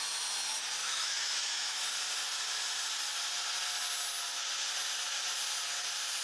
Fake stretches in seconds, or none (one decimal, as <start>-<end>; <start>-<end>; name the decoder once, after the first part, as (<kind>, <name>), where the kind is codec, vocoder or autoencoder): 0.8-1.8 (autoencoder, DAC-VAE)